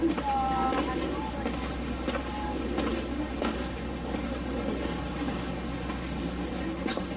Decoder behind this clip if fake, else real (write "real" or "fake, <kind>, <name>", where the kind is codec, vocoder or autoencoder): real